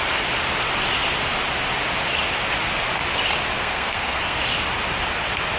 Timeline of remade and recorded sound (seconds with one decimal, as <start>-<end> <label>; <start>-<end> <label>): 0.0-3.6 recorded; 3.6-4.4 remade; 4.4-5.6 recorded